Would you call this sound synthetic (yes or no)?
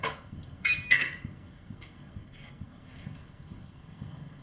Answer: yes